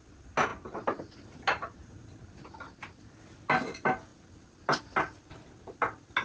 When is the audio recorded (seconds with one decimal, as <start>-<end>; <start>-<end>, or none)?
0.0-6.2